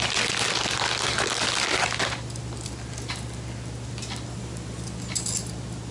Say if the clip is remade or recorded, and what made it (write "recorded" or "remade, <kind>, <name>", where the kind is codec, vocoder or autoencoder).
recorded